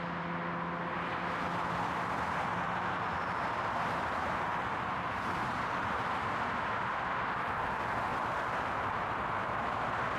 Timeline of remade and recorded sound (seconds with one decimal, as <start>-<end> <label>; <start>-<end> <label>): 0.0-2.5 recorded; 2.5-5.8 remade; 5.8-8.1 recorded; 8.1-9.6 remade; 9.6-10.2 recorded